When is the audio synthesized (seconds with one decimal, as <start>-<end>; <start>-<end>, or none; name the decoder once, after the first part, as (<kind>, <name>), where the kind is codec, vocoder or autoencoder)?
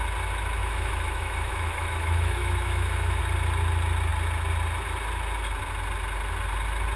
0.6-3.2 (autoencoder, DAC-VAE)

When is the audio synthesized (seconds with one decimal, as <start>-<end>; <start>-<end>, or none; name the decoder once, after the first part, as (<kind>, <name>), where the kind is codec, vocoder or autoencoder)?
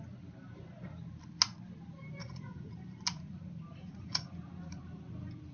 2.2-2.8 (vocoder, Vocos); 3.7-4.3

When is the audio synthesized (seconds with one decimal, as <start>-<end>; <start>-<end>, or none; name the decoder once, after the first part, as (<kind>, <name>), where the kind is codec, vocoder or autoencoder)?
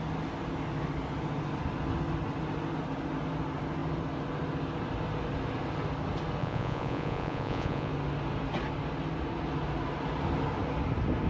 6.4-7.9 (vocoder, Vocos)